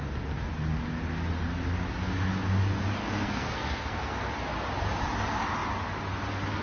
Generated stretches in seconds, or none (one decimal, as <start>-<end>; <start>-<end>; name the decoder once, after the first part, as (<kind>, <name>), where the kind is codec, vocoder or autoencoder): 3.0-4.3 (codec, SNAC)